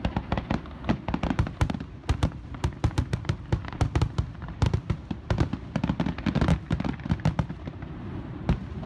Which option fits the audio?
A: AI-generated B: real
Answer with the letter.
A